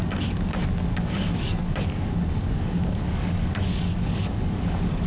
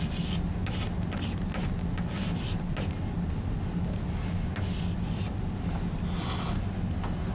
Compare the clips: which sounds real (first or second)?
second